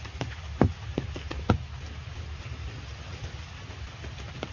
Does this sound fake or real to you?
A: real